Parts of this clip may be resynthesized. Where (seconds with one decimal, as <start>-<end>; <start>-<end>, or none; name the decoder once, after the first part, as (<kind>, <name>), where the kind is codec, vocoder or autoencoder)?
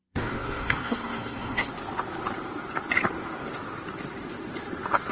0.0-1.7 (codec, SNAC)